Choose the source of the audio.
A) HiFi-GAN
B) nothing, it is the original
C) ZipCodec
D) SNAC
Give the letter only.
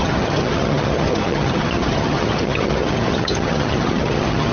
A